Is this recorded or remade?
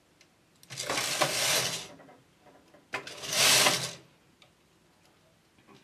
recorded